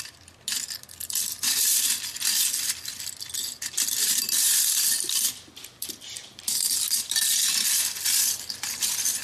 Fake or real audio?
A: real